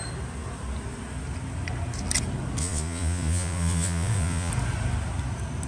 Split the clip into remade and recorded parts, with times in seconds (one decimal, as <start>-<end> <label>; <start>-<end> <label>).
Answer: 0.0-2.6 recorded; 2.6-4.5 remade; 4.5-5.7 recorded